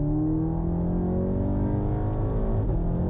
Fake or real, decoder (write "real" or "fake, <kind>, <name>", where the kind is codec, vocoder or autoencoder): real